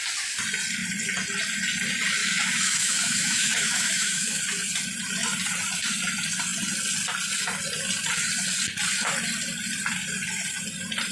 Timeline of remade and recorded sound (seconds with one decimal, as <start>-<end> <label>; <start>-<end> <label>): 0.0-2.2 recorded; 2.2-4.4 remade; 4.4-11.1 recorded